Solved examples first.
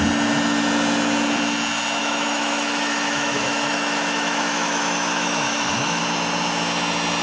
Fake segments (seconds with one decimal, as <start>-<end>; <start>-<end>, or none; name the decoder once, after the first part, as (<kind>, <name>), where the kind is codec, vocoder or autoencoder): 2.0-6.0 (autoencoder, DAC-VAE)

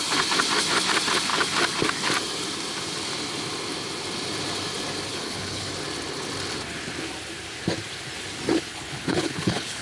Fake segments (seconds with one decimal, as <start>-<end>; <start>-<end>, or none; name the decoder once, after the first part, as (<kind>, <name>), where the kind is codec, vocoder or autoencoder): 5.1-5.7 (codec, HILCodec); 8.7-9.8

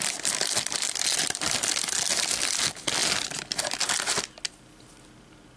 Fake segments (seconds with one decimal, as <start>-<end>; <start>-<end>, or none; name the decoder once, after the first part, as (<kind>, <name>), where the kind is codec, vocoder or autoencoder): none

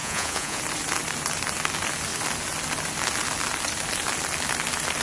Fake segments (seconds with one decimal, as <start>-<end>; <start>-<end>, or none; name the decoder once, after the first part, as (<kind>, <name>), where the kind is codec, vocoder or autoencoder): 0.0-0.6 (vocoder, Vocos)

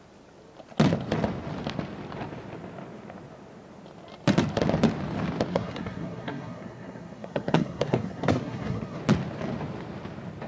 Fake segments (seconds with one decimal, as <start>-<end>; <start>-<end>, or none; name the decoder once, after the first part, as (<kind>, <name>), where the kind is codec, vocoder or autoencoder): 5.5-9.0 (codec, SNAC)